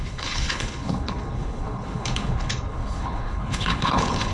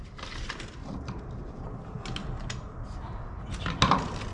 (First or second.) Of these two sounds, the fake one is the first